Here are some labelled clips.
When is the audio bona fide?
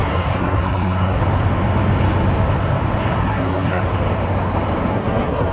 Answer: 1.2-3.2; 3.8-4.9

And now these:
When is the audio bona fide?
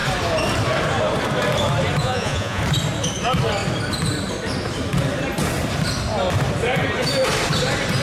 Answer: 0.0-2.0; 2.6-8.0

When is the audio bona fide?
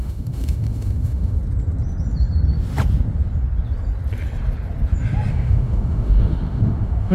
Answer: 1.4-5.3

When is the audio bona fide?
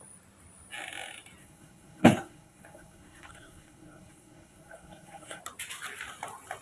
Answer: 0.0-1.4; 5.4-6.6